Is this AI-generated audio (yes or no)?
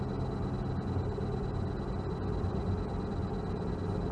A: no